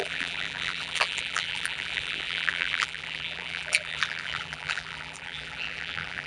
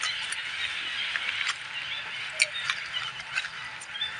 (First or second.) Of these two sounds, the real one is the second